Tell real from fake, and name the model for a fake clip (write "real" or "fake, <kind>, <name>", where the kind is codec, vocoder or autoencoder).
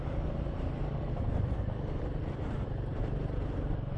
real